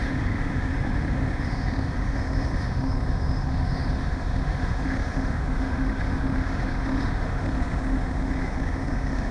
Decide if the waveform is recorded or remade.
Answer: remade